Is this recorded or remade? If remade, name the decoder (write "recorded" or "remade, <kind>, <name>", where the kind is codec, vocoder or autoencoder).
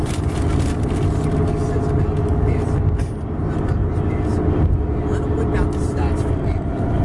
recorded